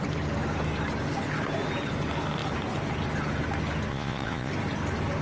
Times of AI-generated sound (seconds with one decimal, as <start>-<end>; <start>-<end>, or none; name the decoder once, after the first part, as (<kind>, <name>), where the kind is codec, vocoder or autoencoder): 3.9-4.5 (vocoder, Vocos)